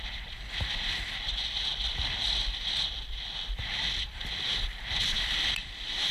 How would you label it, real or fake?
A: fake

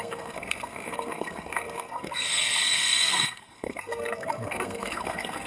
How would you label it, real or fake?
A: fake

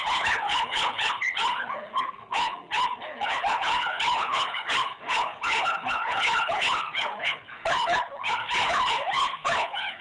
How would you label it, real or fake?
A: fake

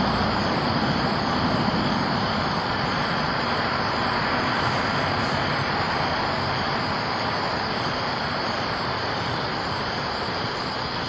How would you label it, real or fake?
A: fake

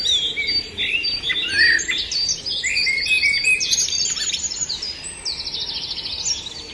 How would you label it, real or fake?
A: real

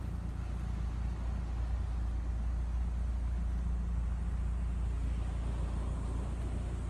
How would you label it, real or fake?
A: real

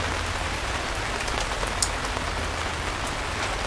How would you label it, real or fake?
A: real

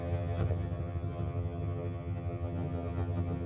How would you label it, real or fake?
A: fake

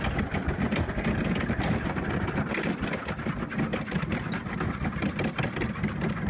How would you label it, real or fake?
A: real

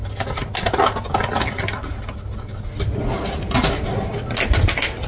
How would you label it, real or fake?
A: real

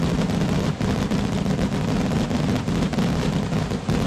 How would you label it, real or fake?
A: real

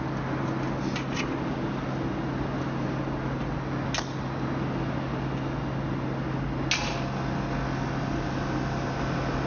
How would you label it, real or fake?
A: real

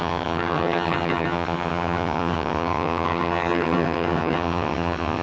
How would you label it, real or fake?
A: fake